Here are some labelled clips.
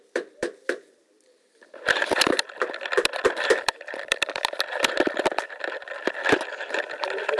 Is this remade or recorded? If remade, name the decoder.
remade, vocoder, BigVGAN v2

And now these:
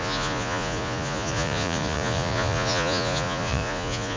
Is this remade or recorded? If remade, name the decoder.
remade, vocoder, Vocos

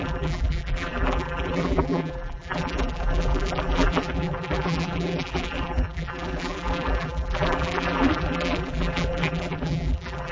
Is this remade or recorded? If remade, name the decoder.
remade, vocoder, BigVGAN v2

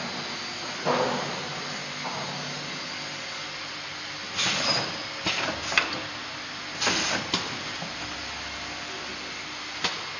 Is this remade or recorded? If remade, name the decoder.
recorded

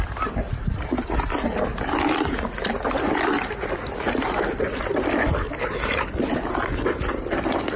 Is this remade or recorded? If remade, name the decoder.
recorded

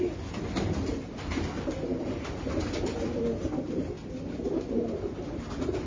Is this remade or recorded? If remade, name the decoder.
recorded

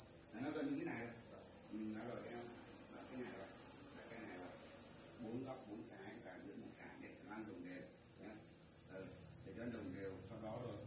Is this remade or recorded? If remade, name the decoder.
recorded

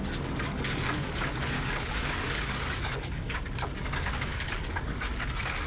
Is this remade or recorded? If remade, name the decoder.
remade, codec, DAC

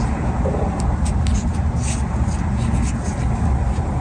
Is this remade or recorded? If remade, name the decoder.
recorded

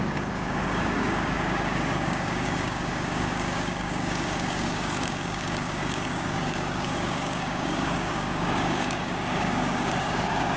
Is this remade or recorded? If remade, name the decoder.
remade, codec, DAC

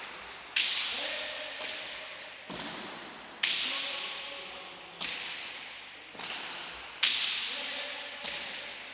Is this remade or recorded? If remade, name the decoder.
recorded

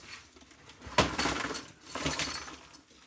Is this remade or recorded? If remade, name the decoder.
recorded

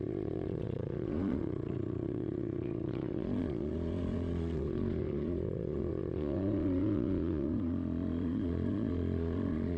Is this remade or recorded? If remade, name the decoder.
remade, vocoder, Vocos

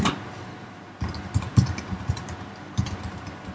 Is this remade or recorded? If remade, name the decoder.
remade, vocoder, BigVGAN v2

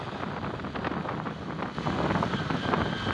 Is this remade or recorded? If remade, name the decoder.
recorded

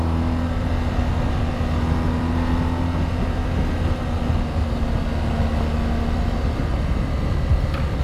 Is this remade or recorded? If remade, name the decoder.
recorded